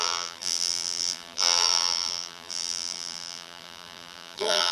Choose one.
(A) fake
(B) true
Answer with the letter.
A